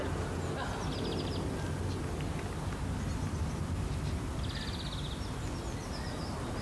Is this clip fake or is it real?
real